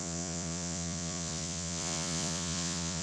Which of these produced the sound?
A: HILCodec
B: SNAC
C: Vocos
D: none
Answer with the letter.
C